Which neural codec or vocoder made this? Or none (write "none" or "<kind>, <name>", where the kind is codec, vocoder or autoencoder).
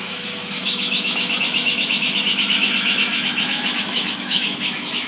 autoencoder, DAC-VAE